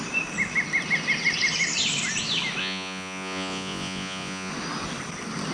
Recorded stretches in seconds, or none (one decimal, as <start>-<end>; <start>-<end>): 0.0-2.6; 4.5-5.5